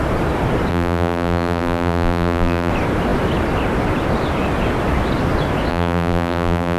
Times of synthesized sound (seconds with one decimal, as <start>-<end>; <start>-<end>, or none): 0.7-2.7; 5.7-6.8